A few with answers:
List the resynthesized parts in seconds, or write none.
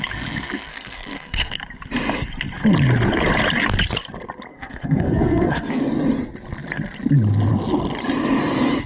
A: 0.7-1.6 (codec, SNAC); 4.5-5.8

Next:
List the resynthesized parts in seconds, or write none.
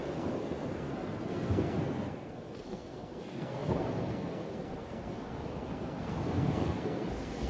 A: 0.0-7.5 (codec, SNAC)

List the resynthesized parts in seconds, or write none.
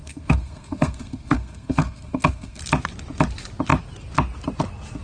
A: 0.0-2.6 (codec, SNAC)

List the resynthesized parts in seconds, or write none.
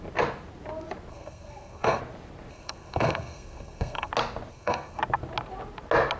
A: 1.1-2.0 (codec, SNAC); 2.5-4.1; 4.5-5.0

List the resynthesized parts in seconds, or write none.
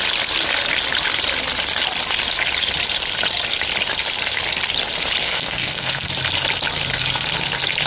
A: 5.2-6.1 (codec, SNAC)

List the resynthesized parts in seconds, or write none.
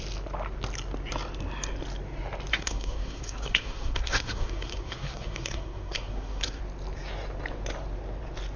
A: 2.5-6.6 (codec, SNAC)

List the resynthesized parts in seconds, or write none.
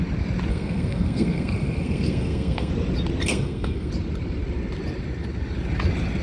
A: 0.5-2.7 (codec, SNAC); 3.2-3.9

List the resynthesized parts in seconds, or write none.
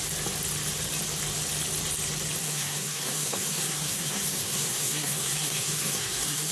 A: 2.4-6.5 (codec, SNAC)